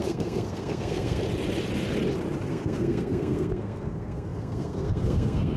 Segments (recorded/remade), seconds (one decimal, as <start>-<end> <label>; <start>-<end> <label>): 0.0-1.2 remade; 1.2-2.5 recorded; 2.5-5.6 remade